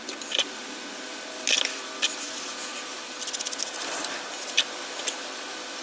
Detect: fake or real real